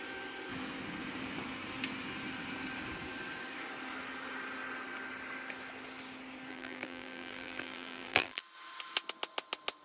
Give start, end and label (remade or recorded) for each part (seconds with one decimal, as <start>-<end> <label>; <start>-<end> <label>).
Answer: 0.0-6.5 recorded; 6.5-8.4 remade; 8.4-9.8 recorded